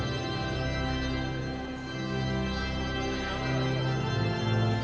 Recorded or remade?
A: recorded